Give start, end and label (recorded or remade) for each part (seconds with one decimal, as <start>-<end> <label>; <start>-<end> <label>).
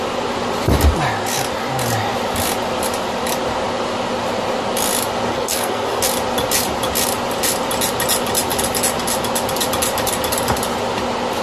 0.0-5.3 recorded; 5.3-6.0 remade; 6.0-11.4 recorded